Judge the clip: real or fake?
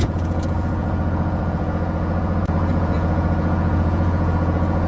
fake